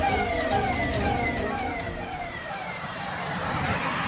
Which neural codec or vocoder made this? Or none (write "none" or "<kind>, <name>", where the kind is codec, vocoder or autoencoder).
vocoder, BigVGAN v2